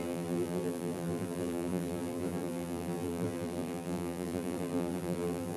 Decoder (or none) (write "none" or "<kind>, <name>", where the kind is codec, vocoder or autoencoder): vocoder, BigVGAN v2